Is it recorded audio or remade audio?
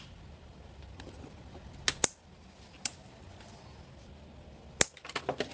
recorded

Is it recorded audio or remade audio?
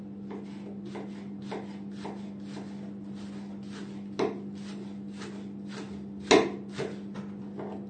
recorded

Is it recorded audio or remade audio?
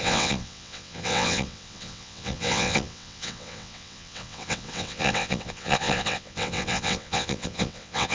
remade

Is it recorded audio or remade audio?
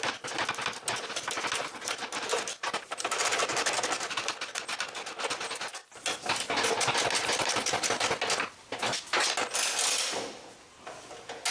recorded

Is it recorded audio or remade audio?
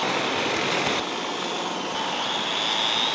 recorded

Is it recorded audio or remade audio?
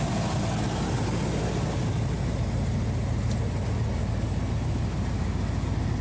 recorded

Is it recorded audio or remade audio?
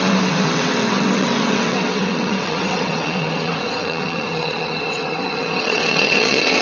remade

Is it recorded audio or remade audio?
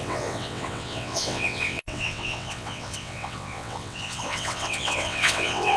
remade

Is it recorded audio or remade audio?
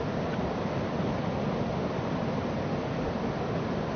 recorded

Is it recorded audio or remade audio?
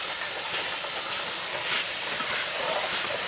recorded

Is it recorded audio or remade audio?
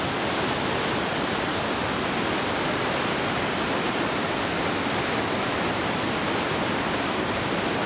recorded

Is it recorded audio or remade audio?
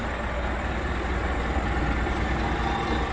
recorded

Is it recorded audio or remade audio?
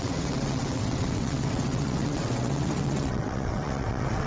remade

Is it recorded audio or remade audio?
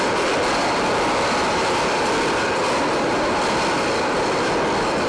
recorded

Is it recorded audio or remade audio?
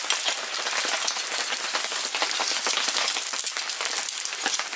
recorded